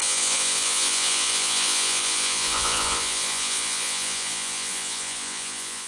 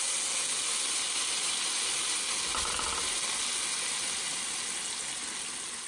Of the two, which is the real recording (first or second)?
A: second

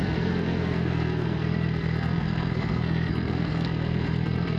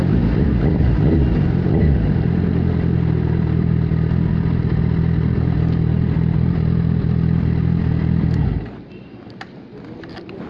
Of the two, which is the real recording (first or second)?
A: second